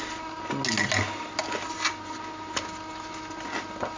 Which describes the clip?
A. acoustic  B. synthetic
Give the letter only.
A